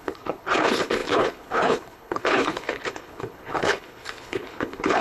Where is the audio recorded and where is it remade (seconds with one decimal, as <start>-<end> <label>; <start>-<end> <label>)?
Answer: 0.0-5.0 remade